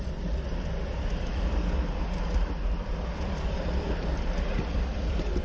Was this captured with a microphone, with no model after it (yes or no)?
no